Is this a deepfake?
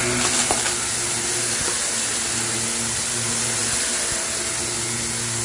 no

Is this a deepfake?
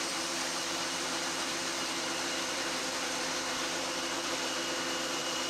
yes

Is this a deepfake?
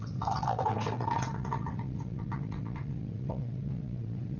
yes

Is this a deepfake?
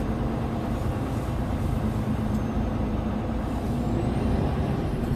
yes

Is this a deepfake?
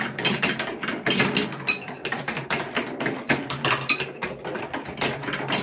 no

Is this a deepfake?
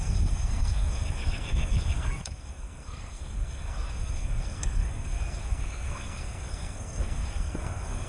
yes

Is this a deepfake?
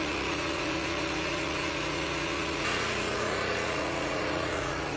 yes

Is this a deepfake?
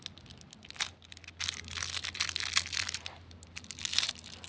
no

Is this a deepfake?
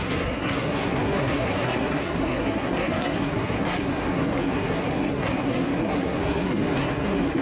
yes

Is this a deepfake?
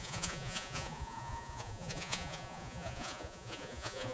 yes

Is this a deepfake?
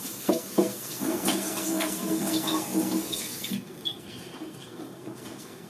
yes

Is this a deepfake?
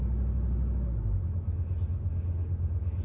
no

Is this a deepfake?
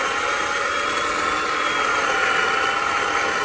no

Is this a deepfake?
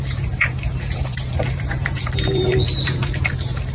yes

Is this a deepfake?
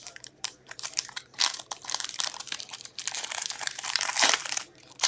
yes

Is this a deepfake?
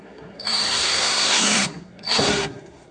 yes